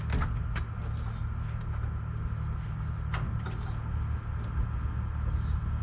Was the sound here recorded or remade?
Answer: recorded